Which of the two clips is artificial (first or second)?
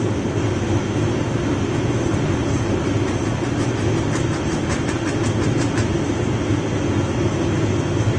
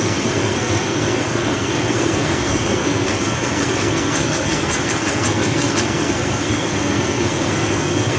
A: second